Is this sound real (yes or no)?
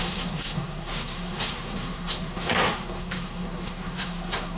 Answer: no